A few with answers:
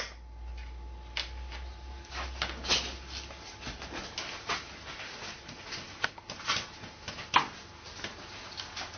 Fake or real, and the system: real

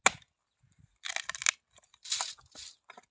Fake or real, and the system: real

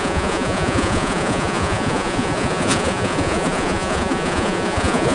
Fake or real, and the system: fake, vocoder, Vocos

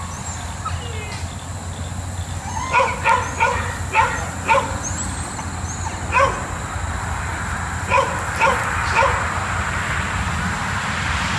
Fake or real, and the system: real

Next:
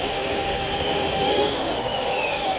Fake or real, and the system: fake, autoencoder, DAC-VAE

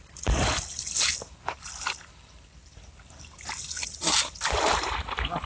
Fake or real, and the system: real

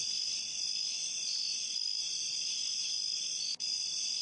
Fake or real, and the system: fake, vocoder, BigVGAN v2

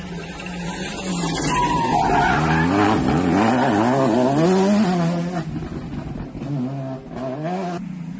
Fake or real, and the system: real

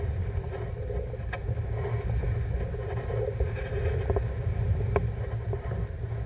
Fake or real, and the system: real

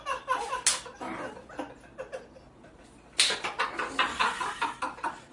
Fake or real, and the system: real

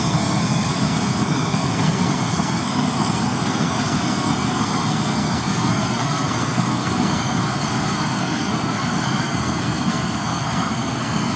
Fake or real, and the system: fake, codec, SNAC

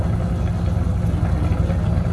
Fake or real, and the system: real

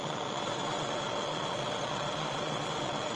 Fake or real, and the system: fake, vocoder, Vocos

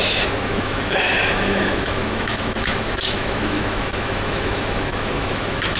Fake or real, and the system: fake, autoencoder, DAC-VAE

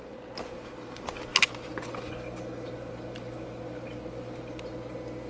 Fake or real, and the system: real